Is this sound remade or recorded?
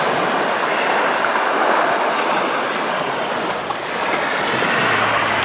recorded